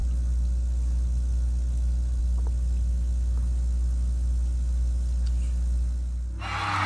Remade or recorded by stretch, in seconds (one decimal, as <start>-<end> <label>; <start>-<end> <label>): 0.0-6.9 recorded